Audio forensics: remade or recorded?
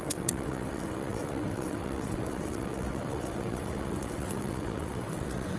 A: remade